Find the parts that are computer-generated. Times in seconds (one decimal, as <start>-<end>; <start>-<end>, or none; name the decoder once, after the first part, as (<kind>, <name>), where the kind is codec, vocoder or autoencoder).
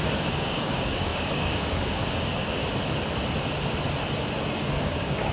0.0-2.6 (codec, DAC); 4.7-5.3